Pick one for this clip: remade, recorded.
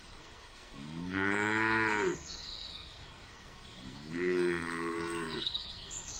remade